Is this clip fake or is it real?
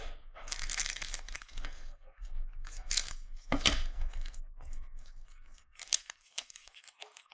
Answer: fake